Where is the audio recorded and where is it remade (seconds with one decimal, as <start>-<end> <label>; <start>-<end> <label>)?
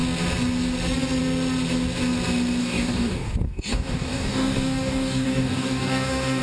0.0-2.6 recorded; 2.6-6.4 remade